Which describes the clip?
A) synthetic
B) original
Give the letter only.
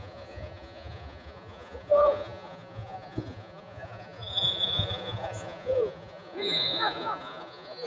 A